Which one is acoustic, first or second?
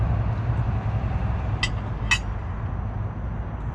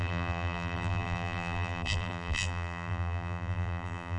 first